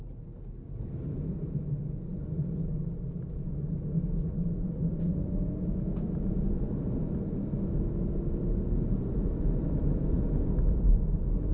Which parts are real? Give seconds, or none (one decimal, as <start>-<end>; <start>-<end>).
0.0-11.5

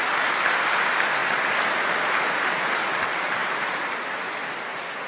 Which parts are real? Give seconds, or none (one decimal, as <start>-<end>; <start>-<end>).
0.0-3.4; 4.3-5.1

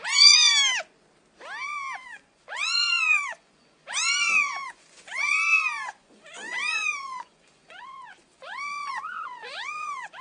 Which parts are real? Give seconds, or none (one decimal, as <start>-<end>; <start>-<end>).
0.5-2.0

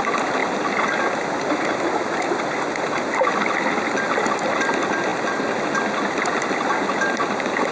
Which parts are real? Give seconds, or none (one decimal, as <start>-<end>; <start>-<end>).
0.0-7.7

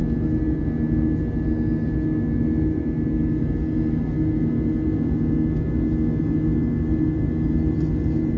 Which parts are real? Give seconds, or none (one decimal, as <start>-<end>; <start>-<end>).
0.0-8.4

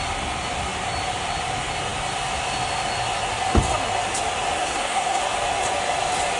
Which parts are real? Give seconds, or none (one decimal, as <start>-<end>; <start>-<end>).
0.0-4.6; 5.2-6.4

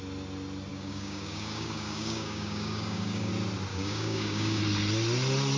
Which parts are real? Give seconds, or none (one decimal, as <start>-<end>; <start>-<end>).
0.0-0.7; 3.3-3.7; 4.6-5.6